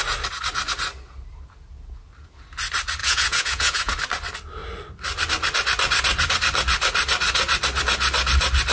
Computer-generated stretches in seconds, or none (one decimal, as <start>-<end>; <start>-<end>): 3.0-3.9